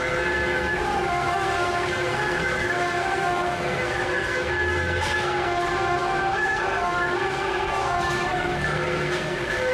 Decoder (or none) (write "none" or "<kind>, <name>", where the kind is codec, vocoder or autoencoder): codec, SNAC